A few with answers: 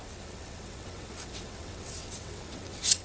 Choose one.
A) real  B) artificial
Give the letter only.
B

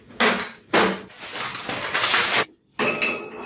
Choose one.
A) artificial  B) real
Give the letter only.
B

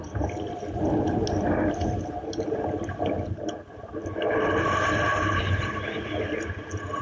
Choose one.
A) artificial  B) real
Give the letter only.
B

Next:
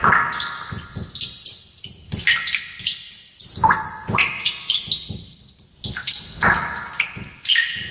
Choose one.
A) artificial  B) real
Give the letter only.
B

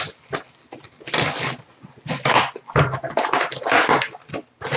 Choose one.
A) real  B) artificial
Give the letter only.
A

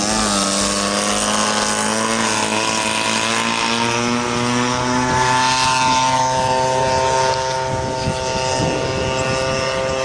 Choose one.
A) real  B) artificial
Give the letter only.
A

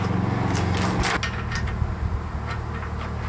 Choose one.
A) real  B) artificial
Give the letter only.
A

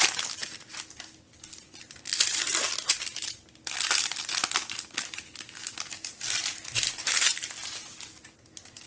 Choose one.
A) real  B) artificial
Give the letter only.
A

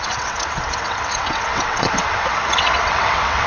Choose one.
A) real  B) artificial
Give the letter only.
B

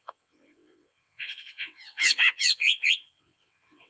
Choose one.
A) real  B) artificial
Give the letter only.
B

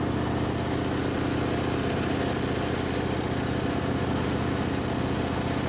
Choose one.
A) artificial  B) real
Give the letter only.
B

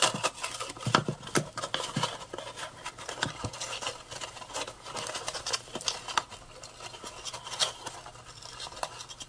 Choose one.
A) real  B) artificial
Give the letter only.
A